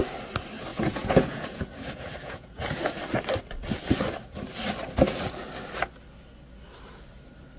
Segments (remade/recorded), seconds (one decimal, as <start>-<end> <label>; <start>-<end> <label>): 0.0-0.7 recorded; 0.7-2.9 remade; 2.9-7.6 recorded